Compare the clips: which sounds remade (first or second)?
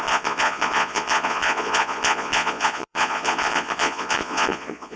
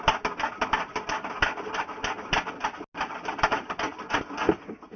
first